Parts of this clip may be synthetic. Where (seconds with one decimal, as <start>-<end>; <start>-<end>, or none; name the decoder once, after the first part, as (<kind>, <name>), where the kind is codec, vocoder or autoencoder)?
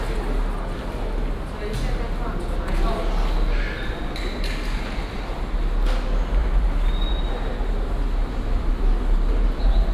none